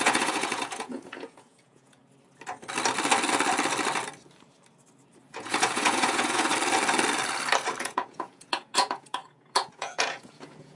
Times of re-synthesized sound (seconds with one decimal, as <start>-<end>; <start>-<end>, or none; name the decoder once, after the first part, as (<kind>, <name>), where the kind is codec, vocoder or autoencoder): 0.0-2.0 (vocoder, Vocos); 5.3-6.5; 7.8-10.8